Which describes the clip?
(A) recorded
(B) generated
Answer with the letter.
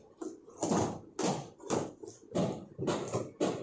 A